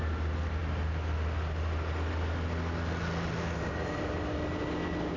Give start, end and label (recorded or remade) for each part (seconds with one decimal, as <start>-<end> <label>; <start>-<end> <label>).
0.0-5.2 recorded